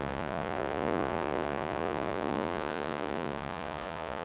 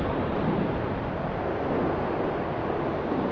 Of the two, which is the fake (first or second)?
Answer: first